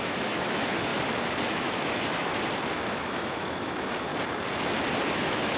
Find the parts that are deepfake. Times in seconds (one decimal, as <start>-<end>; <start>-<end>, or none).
0.0-0.9; 1.5-2.3; 2.9-4.1; 5.1-5.6